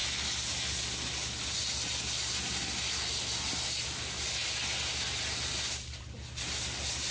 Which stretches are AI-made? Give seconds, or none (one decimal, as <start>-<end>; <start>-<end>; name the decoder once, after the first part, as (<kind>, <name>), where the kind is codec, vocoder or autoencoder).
none